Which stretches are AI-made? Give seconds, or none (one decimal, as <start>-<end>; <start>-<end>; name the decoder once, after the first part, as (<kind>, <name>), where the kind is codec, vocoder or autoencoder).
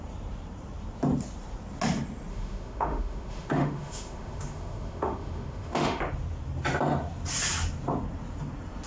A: 2.3-6.0 (autoencoder, DAC-VAE)